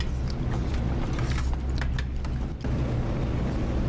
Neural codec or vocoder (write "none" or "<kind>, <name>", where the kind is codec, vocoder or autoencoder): none